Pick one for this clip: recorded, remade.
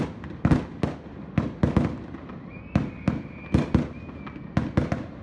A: recorded